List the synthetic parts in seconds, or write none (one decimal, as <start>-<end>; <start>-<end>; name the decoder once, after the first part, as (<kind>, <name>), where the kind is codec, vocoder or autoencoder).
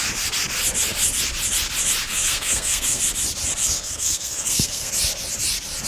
2.1-3.0 (codec, SNAC); 3.6-4.9